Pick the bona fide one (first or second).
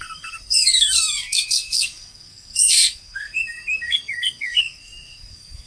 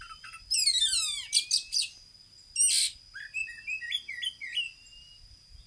second